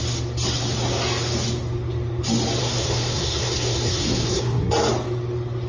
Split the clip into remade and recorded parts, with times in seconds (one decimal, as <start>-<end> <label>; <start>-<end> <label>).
0.0-2.6 recorded; 2.6-4.7 remade; 4.7-5.7 recorded